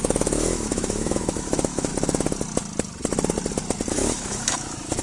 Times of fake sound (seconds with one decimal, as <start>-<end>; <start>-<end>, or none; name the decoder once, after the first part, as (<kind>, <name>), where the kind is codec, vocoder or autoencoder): 0.0-1.9 (autoencoder, DAC-VAE); 3.9-5.0